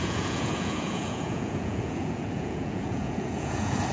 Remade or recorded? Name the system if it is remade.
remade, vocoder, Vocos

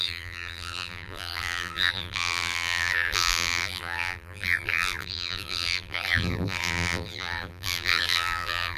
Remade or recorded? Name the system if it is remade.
remade, vocoder, BigVGAN v2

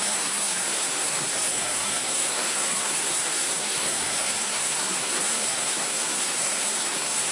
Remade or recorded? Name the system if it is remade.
remade, codec, SNAC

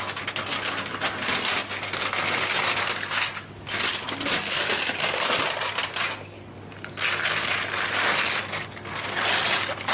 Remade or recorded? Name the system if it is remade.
recorded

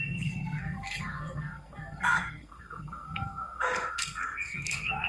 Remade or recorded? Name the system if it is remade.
remade, codec, SNAC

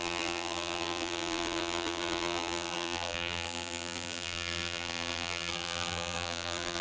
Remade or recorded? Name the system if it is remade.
remade, vocoder, BigVGAN v2